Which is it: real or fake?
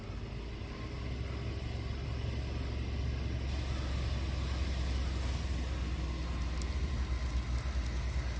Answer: real